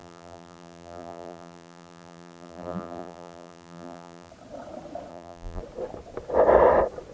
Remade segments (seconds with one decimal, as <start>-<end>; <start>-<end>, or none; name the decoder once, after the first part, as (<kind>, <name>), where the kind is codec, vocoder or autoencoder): 0.0-4.3 (vocoder, BigVGAN v2); 5.1-5.6